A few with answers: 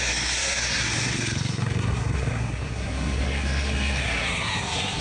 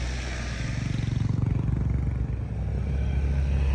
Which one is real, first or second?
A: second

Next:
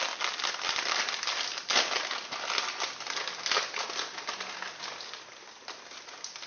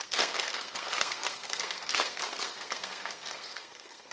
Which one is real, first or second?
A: first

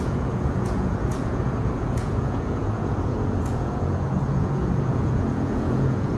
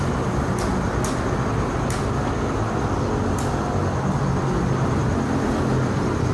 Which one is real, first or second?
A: second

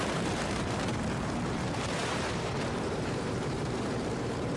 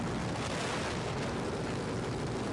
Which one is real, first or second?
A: second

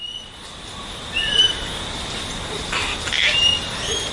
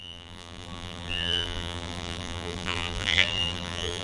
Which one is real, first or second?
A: first